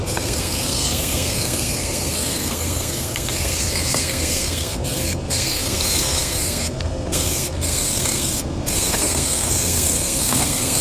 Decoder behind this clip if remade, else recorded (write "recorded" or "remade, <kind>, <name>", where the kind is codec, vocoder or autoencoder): remade, codec, SNAC